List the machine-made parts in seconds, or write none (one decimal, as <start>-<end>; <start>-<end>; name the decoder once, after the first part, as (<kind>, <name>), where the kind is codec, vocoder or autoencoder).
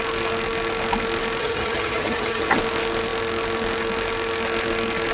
1.4-2.6 (vocoder, HiFi-GAN)